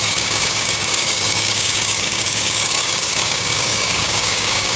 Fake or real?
fake